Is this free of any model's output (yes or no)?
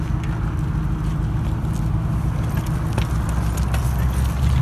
yes